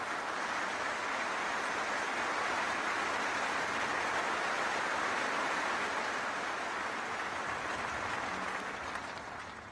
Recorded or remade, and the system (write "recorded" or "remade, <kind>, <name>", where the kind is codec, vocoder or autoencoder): recorded